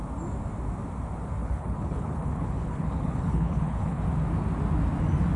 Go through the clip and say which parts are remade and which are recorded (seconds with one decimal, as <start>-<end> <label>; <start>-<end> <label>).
0.0-1.4 recorded; 1.4-4.0 remade; 4.0-5.4 recorded